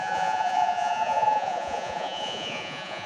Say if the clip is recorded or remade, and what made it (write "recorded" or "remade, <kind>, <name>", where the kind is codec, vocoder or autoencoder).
remade, vocoder, Vocos